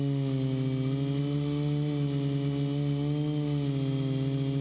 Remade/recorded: recorded